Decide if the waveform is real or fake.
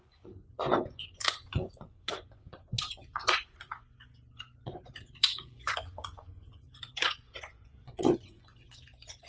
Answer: fake